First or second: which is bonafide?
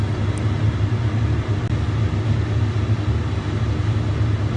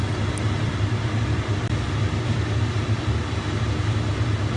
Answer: first